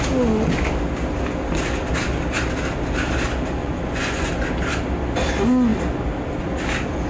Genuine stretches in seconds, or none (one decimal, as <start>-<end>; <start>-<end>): 0.0-3.6; 4.3-7.1